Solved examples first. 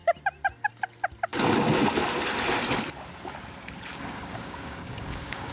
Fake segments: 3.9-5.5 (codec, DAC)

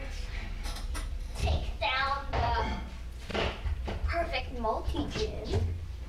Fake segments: 1.4-2.6 (vocoder, BigVGAN v2)

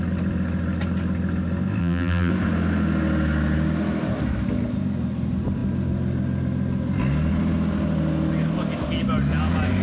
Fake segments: 1.8-2.3 (vocoder, BigVGAN v2)

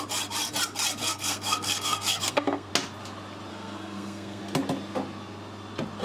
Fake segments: 1.0-2.7 (codec, SNAC); 3.5-4.4

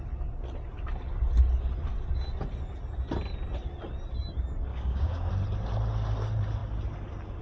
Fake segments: 4.7-5.3 (codec, DAC)

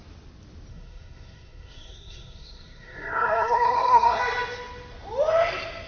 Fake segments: 0.7-4.2 (codec, SNAC)

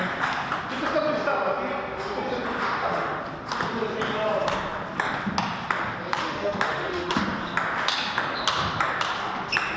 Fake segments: 2.6-3.2 (autoencoder, DAC-VAE); 6.2-7.2